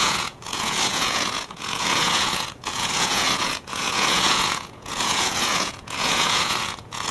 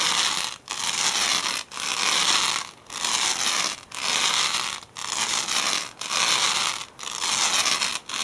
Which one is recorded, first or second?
second